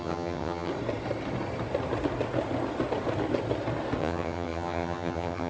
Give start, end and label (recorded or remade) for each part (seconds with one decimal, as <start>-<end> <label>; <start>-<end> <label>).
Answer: 0.0-0.7 remade; 0.7-4.0 recorded; 4.0-5.5 remade

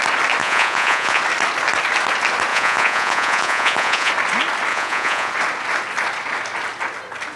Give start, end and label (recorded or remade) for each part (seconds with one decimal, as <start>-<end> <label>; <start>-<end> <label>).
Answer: 0.0-0.4 recorded; 0.4-1.2 remade; 1.2-2.5 recorded; 2.5-4.1 remade; 4.1-4.7 recorded; 4.7-5.3 remade; 5.3-7.4 recorded

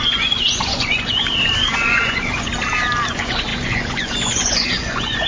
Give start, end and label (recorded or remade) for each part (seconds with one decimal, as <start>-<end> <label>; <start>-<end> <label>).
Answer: 0.0-1.2 remade; 1.2-1.7 recorded; 1.7-2.5 remade; 2.5-3.1 recorded; 3.1-5.3 remade

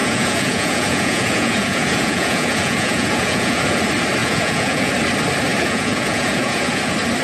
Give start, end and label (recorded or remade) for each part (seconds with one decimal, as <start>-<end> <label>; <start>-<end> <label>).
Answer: 0.0-3.8 remade; 3.8-4.2 recorded; 4.2-4.9 remade; 4.9-5.5 recorded; 5.5-6.8 remade; 6.8-7.2 recorded